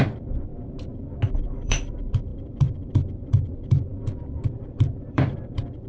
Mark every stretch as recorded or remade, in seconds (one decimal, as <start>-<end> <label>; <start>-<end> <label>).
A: 0.0-0.5 remade; 0.5-1.4 recorded; 1.4-5.9 remade